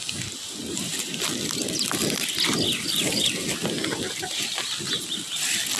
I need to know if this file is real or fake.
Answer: real